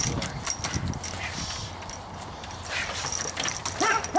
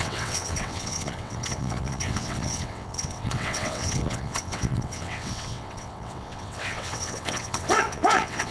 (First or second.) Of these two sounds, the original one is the first